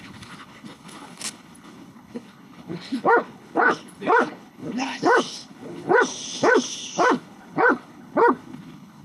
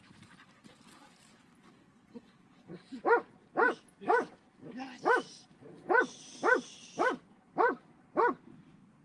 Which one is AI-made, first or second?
first